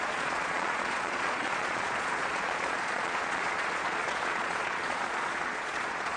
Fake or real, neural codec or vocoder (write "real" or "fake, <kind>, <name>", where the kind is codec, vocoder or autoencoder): fake, vocoder, Vocos